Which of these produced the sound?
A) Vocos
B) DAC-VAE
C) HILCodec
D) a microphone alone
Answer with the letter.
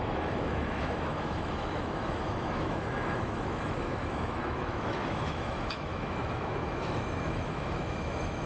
B